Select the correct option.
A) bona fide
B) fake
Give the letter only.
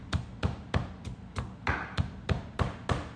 A